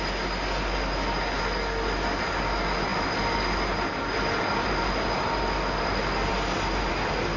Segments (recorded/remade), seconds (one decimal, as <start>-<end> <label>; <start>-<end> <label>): 0.0-7.4 recorded